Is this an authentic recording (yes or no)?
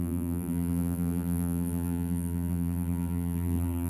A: no